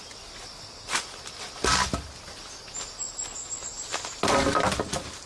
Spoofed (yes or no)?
no